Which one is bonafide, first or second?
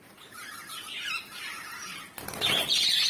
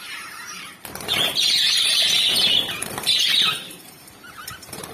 first